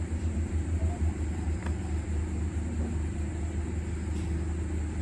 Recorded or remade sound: recorded